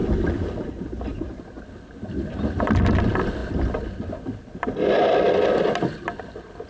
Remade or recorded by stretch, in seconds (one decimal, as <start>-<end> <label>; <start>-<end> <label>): 0.0-6.7 recorded